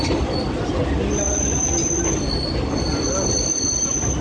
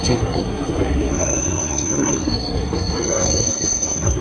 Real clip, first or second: first